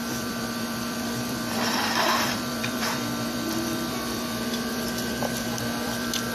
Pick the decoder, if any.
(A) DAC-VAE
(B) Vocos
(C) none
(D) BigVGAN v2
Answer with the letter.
D